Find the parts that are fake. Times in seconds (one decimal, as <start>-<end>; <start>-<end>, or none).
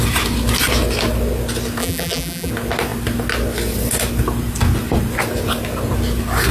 1.8-2.5